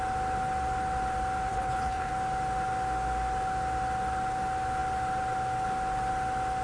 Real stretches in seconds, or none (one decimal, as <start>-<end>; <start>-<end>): 0.0-1.5; 2.1-6.6